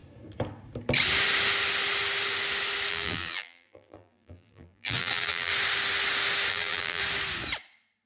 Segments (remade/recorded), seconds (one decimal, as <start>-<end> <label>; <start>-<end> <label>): 0.0-2.9 recorded; 2.9-5.5 remade; 5.5-6.5 recorded; 6.5-7.0 remade; 7.0-8.1 recorded